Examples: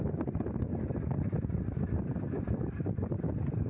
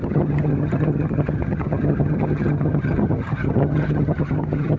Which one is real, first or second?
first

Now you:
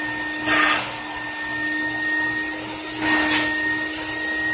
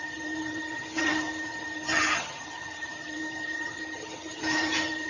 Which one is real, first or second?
first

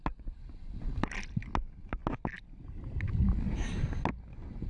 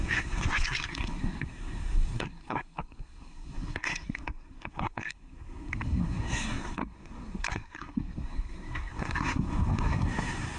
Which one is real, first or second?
first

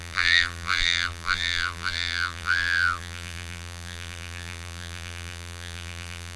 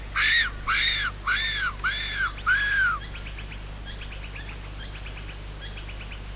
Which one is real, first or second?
second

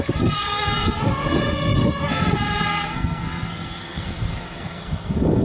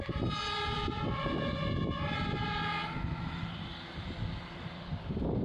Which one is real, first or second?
second